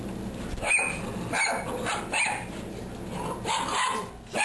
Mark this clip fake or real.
real